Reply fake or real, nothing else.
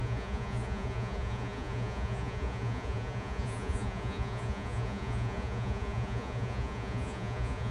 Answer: fake